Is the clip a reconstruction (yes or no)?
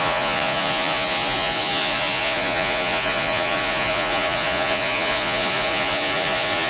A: yes